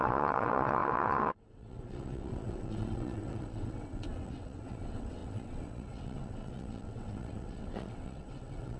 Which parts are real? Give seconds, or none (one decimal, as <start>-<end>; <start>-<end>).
none